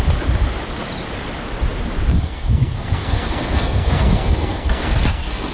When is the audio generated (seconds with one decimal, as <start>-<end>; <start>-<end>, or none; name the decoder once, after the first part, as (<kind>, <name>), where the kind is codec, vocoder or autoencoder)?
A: 2.1-5.5 (codec, SNAC)